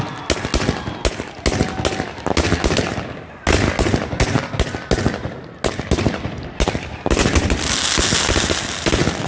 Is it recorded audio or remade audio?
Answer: recorded